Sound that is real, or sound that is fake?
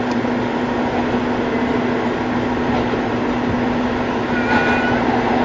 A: real